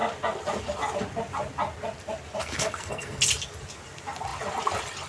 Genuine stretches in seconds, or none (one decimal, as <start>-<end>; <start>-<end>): 0.0-2.4; 3.2-5.1